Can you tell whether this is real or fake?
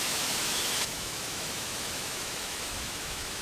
fake